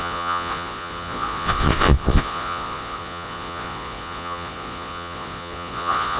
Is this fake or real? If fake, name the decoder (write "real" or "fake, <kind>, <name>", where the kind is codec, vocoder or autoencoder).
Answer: fake, vocoder, Vocos